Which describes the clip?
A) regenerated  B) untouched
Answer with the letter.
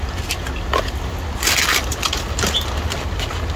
B